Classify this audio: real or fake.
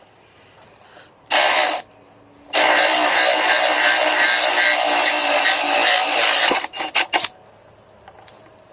real